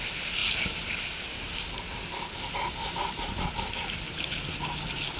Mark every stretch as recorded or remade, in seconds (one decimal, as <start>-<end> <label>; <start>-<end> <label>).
0.0-5.2 recorded